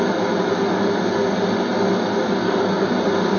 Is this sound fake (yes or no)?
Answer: no